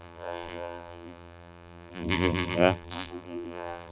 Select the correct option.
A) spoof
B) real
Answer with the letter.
A